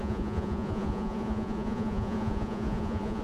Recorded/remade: remade